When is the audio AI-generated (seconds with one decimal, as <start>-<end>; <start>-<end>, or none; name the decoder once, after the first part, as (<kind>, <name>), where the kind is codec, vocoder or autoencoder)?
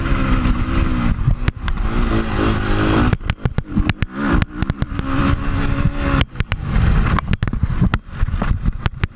none